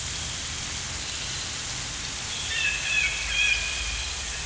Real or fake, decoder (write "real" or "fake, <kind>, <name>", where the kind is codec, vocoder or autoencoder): real